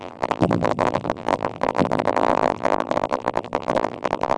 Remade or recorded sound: remade